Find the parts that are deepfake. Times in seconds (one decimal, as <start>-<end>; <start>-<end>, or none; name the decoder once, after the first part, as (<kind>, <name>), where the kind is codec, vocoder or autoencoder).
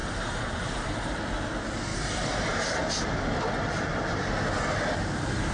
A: 0.0-1.2 (vocoder, BigVGAN v2); 1.9-2.8